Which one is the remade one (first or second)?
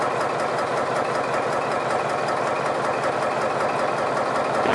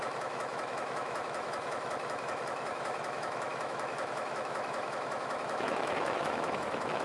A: second